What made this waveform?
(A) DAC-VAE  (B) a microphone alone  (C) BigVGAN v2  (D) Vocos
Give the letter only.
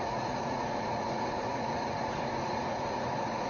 D